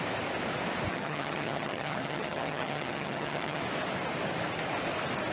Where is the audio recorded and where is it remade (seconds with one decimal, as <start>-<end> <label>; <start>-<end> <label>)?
0.0-0.9 recorded; 0.9-3.6 remade; 3.6-5.3 recorded